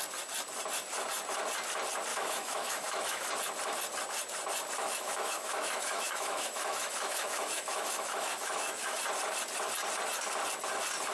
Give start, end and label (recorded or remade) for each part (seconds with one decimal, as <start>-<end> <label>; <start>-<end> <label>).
0.0-2.1 recorded; 2.1-3.3 remade; 3.3-4.8 recorded; 4.8-9.0 remade; 9.0-11.1 recorded